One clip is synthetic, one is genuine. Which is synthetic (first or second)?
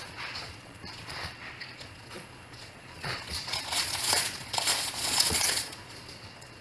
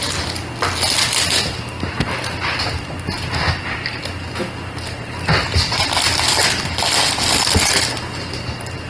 first